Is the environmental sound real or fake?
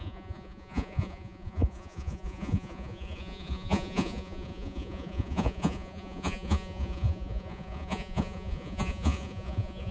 fake